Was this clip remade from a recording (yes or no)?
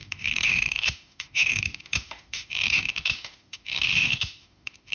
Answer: yes